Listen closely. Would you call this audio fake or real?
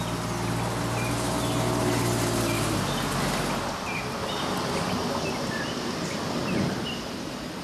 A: real